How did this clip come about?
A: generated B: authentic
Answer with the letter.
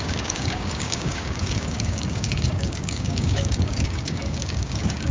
A